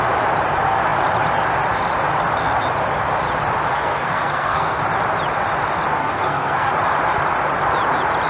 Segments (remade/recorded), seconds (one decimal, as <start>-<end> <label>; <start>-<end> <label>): 0.0-3.7 recorded; 3.7-4.8 remade; 4.8-6.0 recorded; 6.0-6.7 remade; 6.7-8.3 recorded